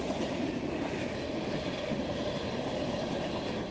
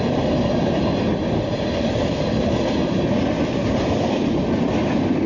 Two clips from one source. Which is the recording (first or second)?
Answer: second